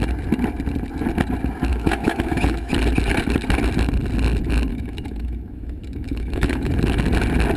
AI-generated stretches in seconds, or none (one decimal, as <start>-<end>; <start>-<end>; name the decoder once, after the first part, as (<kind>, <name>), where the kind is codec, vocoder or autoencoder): 1.7-2.7 (autoencoder, DAC-VAE); 4.7-6.7